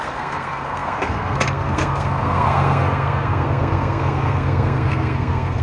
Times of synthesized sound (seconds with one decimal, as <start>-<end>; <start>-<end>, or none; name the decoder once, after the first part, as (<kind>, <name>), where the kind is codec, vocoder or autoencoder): 0.0-5.6 (codec, SNAC)

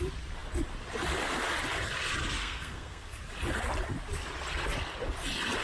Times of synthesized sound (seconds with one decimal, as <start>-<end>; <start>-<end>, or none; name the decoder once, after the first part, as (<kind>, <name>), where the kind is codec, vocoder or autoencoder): 2.4-3.2 (codec, SNAC)

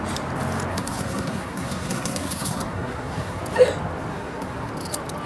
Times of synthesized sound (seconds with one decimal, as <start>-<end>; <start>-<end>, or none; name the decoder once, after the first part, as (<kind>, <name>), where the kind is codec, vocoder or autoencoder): 0.7-3.4 (codec, SNAC); 4.1-4.7

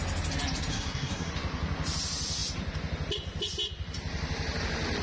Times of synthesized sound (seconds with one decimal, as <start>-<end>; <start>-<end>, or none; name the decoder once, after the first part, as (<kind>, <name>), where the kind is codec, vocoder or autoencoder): 0.7-1.3 (codec, SNAC)

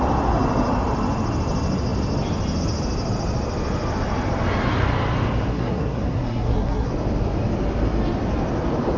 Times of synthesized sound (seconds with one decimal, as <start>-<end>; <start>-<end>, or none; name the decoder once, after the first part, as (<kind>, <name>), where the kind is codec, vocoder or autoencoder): 5.5-6.9 (codec, SNAC)

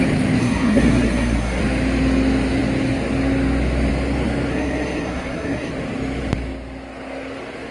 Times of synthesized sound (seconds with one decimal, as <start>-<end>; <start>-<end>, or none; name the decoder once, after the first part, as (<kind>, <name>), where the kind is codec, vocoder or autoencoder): 0.4-1.6 (codec, SNAC); 4.5-5.7

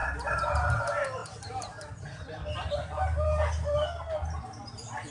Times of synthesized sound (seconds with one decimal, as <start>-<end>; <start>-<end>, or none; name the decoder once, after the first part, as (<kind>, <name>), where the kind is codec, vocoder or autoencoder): none

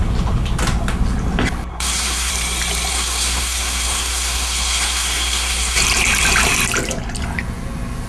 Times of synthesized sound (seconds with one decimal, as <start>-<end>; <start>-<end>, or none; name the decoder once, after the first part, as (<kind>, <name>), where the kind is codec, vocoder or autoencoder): 1.7-2.3 (codec, SNAC); 2.9-5.8